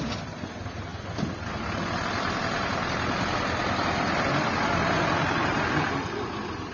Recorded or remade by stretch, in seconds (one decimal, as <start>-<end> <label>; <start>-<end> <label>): 0.0-6.7 recorded